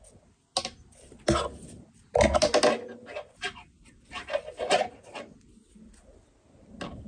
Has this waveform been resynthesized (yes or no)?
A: no